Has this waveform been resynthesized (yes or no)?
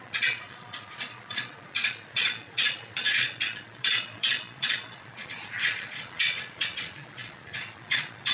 yes